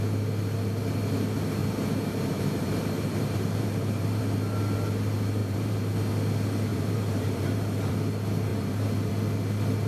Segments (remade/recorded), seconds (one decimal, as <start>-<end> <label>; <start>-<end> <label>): 0.0-1.6 recorded; 1.6-4.2 remade; 4.2-5.4 recorded; 5.4-5.9 remade; 5.9-6.7 recorded; 6.7-7.9 remade; 7.9-8.5 recorded; 8.5-9.1 remade; 9.1-9.9 recorded